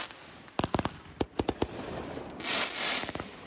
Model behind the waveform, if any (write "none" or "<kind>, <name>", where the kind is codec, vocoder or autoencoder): none